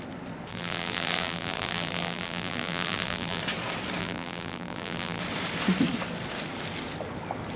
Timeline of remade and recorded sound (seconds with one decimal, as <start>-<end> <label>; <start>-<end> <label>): 0.0-0.5 recorded; 0.5-3.4 remade; 3.4-4.0 recorded; 4.0-5.2 remade; 5.2-7.6 recorded